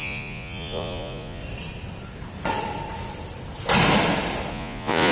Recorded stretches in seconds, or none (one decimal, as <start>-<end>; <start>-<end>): 1.4-4.5